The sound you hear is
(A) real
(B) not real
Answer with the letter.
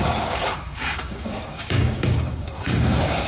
B